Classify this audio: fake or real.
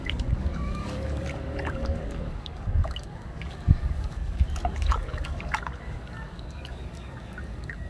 fake